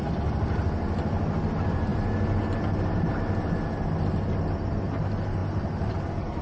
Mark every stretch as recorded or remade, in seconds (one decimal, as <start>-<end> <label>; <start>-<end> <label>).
0.0-6.4 recorded